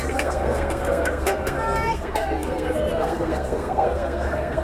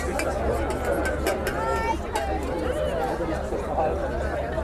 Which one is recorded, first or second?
second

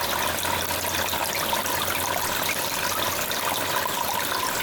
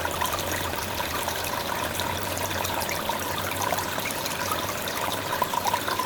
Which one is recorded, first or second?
first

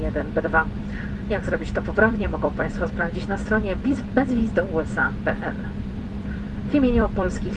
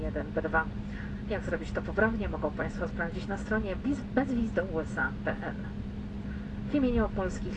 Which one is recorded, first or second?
second